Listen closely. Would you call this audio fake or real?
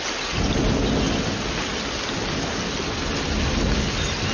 real